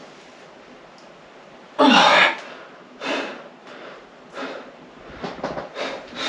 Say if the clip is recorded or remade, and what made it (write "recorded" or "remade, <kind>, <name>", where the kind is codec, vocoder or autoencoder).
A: recorded